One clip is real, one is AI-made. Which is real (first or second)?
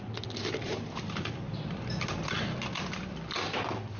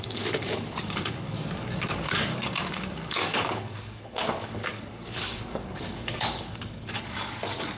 first